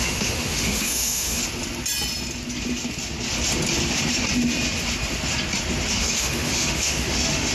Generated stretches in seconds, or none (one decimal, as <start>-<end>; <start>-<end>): 0.0-1.4; 5.9-7.5